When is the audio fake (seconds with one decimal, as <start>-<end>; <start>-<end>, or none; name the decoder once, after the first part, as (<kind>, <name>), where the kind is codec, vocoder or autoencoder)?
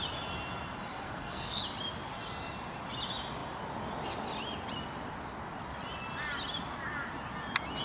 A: 0.9-1.6 (codec, SNAC)